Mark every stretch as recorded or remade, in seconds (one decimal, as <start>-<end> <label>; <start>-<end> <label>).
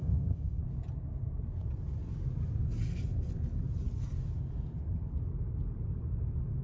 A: 0.0-0.6 remade; 0.6-6.6 recorded